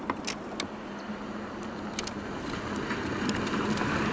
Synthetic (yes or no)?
no